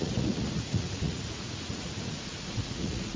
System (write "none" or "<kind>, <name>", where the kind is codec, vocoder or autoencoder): vocoder, Vocos